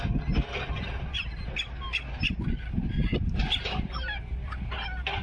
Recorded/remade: recorded